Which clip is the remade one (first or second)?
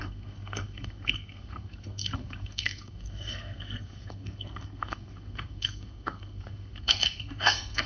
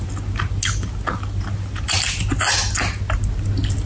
first